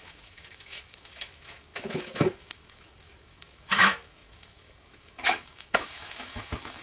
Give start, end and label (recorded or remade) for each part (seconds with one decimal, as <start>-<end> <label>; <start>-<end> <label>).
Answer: 0.0-6.8 remade